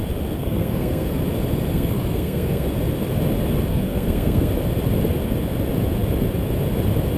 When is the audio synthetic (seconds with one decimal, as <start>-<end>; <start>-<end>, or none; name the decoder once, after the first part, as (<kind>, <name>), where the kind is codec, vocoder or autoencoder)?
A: 0.4-1.2 (codec, SNAC); 1.7-2.7; 3.7-4.5

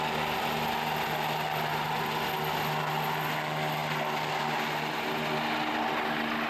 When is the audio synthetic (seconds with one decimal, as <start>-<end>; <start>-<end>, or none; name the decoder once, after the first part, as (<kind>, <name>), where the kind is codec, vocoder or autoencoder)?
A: none

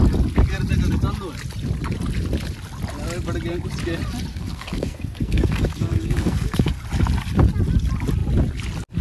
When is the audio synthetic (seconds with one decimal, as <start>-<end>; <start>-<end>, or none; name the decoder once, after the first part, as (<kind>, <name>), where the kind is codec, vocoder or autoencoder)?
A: 4.3-6.8 (codec, SNAC)

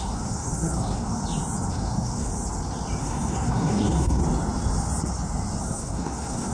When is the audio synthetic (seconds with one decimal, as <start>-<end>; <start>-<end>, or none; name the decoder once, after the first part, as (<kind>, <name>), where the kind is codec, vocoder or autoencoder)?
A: 0.0-1.2 (codec, SNAC); 1.7-2.3; 3.0-4.2; 5.6-6.5